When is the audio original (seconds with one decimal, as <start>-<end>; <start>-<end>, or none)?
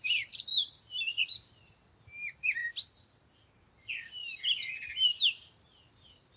0.0-0.5; 1.2-2.6; 3.7-4.2; 5.9-6.4